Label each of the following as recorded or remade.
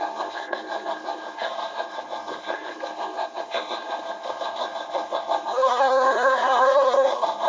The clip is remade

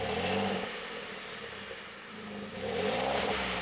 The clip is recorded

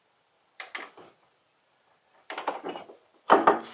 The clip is remade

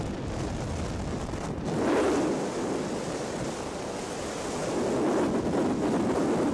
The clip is recorded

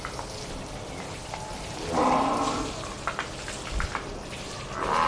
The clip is recorded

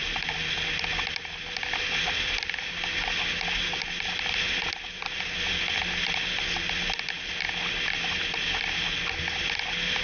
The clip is recorded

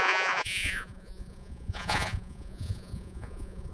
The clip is remade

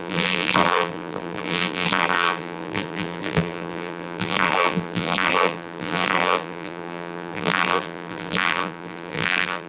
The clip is remade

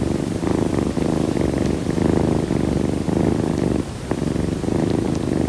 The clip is recorded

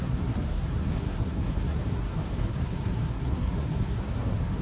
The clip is remade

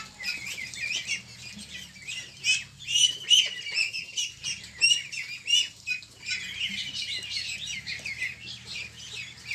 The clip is recorded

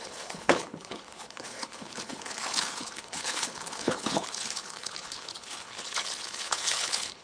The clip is remade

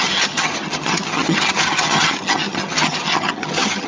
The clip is remade